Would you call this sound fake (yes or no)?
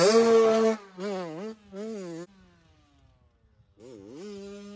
no